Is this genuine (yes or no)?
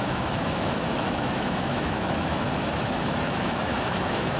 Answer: no